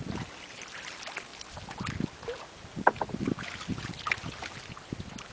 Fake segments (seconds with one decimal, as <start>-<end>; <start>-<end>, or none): none